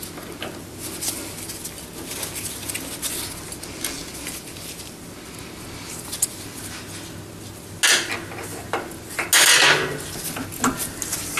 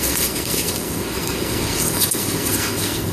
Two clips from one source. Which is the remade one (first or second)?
second